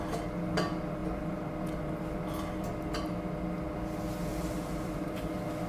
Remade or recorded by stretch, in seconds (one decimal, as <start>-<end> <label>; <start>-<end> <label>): 0.0-1.0 recorded; 1.0-1.5 remade; 1.5-4.3 recorded; 4.3-5.3 remade; 5.3-5.7 recorded